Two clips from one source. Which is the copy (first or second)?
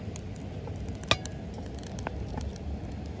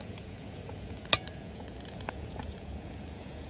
second